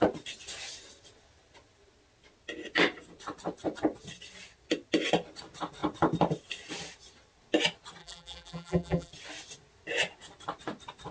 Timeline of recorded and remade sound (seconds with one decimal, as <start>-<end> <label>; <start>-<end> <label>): 0.0-8.0 recorded; 8.0-9.1 remade; 9.1-11.1 recorded